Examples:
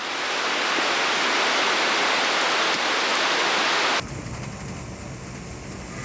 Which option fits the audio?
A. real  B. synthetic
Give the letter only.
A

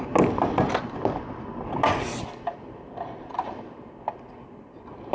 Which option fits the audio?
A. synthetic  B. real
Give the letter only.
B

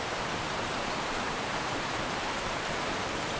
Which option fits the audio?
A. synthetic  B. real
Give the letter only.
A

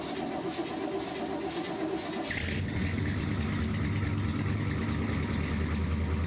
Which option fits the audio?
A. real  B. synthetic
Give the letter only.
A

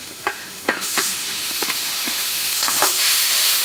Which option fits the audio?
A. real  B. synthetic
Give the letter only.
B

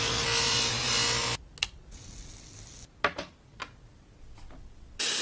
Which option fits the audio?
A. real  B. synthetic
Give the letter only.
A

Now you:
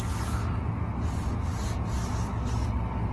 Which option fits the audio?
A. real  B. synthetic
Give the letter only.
A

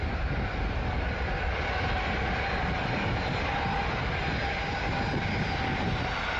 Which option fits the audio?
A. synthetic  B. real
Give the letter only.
B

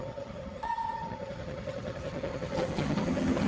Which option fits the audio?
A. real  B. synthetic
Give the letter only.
B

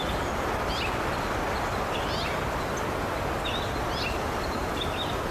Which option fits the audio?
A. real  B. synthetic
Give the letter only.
A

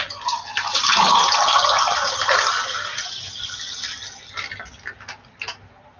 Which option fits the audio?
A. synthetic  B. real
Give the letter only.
B